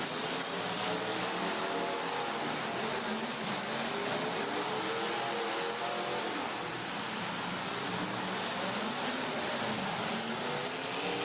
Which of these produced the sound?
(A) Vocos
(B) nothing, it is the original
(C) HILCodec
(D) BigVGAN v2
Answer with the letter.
B